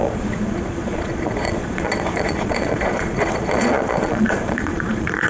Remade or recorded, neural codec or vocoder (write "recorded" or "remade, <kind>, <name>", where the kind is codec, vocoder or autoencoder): remade, vocoder, Vocos